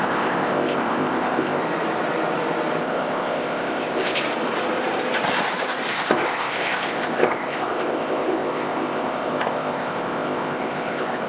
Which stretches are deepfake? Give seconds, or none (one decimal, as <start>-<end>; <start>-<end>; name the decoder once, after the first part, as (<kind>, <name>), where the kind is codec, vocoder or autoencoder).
0.0-1.6 (codec, ZipCodec); 2.8-4.2; 5.9-11.3